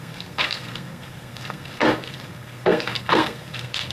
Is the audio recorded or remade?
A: remade